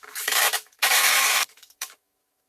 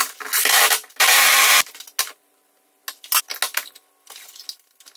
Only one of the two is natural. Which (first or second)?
second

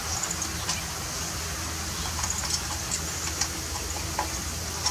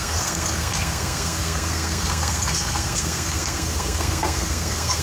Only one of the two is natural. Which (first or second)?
first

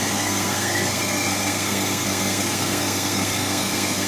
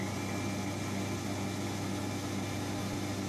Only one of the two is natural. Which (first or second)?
second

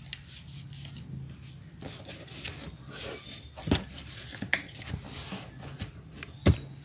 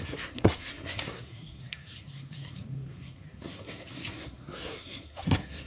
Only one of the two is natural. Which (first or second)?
first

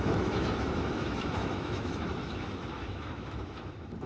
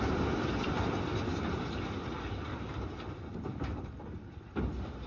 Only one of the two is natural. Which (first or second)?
second